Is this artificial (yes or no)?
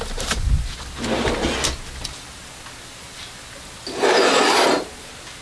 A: no